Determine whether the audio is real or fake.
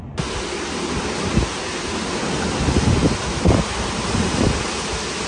real